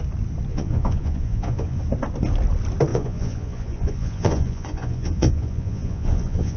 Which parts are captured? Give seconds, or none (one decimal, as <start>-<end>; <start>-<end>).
0.0-0.5; 1.8-2.9